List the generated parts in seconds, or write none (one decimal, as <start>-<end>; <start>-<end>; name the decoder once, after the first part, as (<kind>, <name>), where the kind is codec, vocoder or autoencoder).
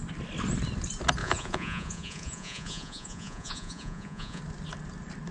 1.2-4.4 (vocoder, Vocos)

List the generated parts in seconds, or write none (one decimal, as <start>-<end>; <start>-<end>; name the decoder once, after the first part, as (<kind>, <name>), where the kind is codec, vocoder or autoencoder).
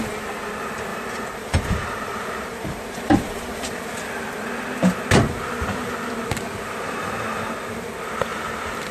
0.9-3.7 (vocoder, BigVGAN v2)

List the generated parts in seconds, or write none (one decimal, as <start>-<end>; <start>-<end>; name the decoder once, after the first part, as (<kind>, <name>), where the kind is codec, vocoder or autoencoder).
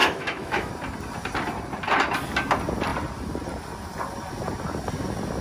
0.0-0.7 (autoencoder, DAC-VAE)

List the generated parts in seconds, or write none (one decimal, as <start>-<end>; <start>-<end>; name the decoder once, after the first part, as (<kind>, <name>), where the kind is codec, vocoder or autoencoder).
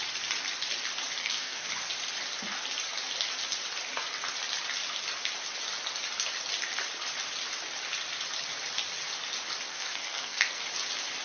1.2-1.7 (codec, SNAC); 9.7-10.6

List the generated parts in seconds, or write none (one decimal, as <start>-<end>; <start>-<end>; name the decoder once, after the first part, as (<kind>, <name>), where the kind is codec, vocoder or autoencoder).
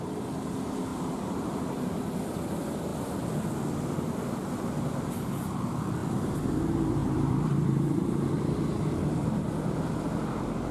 0.9-1.6 (vocoder, BigVGAN v2); 7.0-8.3